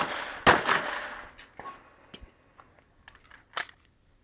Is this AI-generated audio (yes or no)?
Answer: no